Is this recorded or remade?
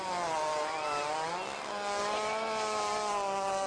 recorded